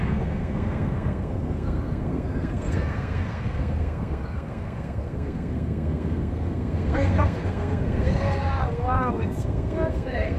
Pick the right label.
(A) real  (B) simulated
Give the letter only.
B